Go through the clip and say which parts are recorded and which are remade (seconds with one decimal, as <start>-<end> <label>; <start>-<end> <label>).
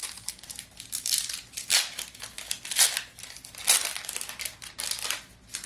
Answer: 0.0-1.6 remade; 1.6-5.7 recorded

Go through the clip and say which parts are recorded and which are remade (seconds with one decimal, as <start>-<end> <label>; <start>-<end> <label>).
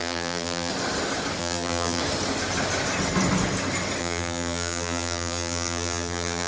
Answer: 0.0-0.7 remade; 0.7-1.4 recorded; 1.4-2.0 remade; 2.0-4.0 recorded; 4.0-6.5 remade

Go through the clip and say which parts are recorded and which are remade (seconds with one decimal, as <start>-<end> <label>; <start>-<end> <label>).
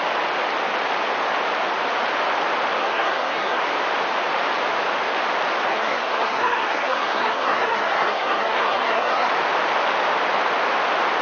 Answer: 0.0-2.8 recorded; 2.8-3.6 remade; 3.6-5.7 recorded; 5.7-9.3 remade; 9.3-11.2 recorded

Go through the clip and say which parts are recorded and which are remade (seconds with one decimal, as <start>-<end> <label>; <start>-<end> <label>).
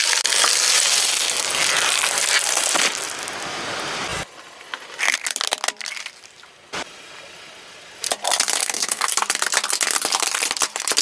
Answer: 0.0-8.6 recorded; 8.6-9.1 remade; 9.1-11.0 recorded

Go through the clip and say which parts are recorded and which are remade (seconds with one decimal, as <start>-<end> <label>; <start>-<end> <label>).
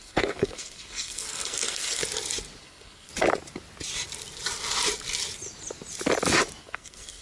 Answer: 0.0-2.0 remade; 2.0-2.6 recorded; 2.6-3.1 remade; 3.1-6.6 recorded; 6.6-7.2 remade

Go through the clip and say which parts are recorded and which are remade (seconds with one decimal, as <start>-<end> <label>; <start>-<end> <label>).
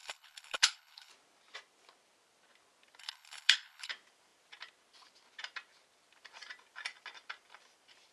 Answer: 0.0-1.1 remade; 1.1-3.0 recorded; 3.0-3.9 remade; 3.9-8.1 recorded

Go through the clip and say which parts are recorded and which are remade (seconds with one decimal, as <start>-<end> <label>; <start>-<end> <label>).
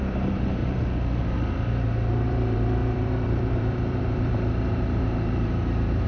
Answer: 0.0-0.6 remade; 0.6-2.1 recorded; 2.1-6.1 remade